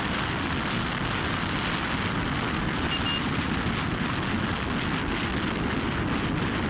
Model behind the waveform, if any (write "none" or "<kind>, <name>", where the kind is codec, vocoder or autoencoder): none